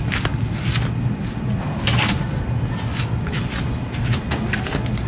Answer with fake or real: real